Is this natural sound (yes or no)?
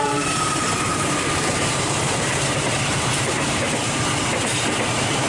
no